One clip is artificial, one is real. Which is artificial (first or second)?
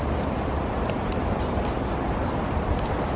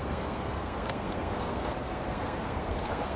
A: second